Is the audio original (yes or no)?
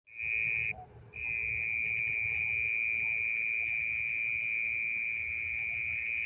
yes